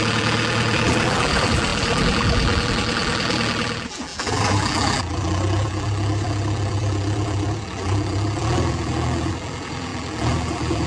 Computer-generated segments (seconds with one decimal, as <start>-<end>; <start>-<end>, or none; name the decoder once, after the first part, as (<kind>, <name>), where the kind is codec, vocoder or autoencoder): 0.0-10.9 (vocoder, BigVGAN v2)